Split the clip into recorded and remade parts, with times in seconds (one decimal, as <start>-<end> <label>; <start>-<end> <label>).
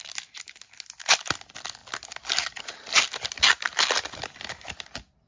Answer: 0.0-5.3 recorded